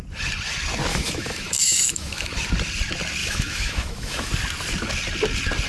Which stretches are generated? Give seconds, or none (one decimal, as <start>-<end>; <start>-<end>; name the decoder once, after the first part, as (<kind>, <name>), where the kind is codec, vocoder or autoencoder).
0.9-2.4 (autoencoder, DAC-VAE); 3.2-4.3